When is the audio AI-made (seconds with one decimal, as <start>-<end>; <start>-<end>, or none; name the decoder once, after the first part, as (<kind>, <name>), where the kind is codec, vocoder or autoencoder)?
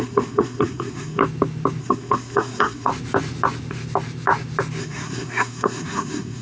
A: 0.0-1.2 (codec, SNAC); 1.8-2.9; 4.8-6.4